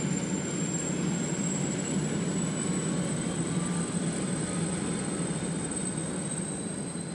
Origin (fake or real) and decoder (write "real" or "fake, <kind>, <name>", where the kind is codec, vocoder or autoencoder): real